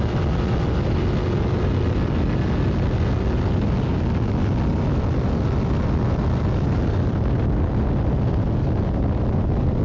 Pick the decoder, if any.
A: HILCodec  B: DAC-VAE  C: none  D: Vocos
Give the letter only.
C